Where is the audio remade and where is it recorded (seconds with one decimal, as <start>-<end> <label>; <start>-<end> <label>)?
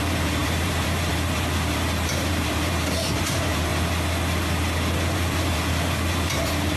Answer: 0.0-3.7 remade; 3.7-5.0 recorded; 5.0-6.8 remade